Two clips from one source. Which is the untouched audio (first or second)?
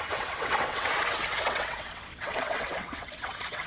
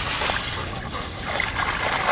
second